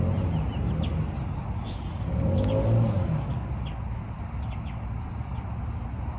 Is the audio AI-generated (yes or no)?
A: no